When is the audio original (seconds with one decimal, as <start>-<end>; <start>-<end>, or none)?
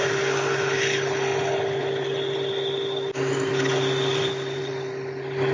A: 0.0-5.5